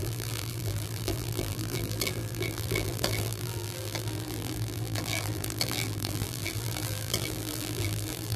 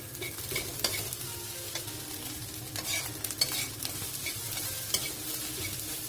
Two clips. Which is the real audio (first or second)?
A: second